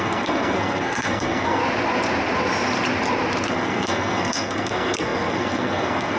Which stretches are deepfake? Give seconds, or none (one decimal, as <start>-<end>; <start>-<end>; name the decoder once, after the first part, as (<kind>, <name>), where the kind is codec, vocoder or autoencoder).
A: 0.0-1.6 (codec, SNAC); 3.5-6.2